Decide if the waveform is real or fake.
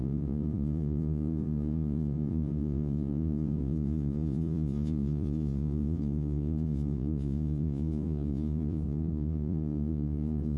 fake